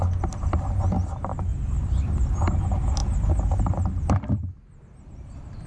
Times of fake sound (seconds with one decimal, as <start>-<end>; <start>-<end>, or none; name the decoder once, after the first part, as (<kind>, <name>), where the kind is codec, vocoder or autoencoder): none